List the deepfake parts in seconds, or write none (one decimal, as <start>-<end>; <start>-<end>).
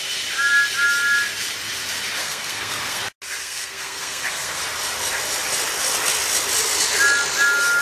2.2-3.0; 3.4-4.6